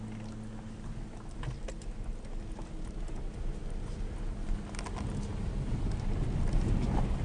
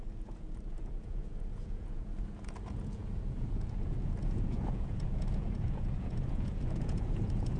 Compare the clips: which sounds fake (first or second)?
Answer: second